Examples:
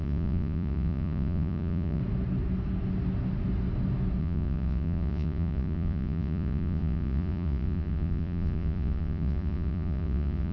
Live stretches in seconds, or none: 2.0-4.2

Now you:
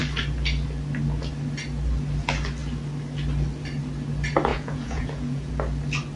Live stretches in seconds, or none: 0.0-4.5; 5.5-6.2